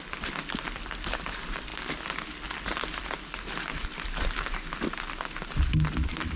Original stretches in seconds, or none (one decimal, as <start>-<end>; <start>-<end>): 1.7-5.5